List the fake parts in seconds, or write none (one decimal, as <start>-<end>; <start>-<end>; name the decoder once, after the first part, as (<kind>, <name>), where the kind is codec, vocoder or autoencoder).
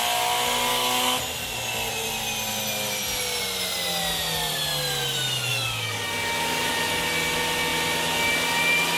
0.7-1.2 (codec, DAC); 5.5-6.7